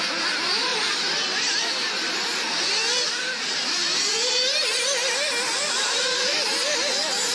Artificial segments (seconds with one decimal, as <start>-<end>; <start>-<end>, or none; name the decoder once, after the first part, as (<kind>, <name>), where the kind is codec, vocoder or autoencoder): none